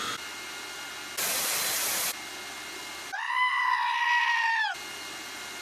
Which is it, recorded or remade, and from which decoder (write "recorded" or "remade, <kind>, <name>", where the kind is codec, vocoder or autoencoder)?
recorded